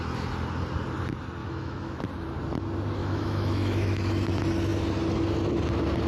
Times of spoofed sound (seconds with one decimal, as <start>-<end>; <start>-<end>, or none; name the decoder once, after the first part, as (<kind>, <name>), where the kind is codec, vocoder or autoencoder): 1.4-2.0 (autoencoder, DAC-VAE); 3.0-4.1